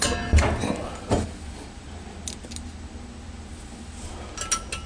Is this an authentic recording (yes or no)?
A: yes